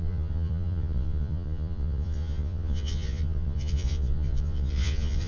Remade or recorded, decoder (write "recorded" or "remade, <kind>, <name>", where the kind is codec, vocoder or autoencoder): remade, vocoder, Vocos